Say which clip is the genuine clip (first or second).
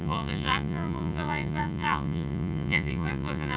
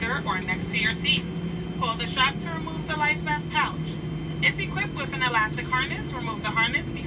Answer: second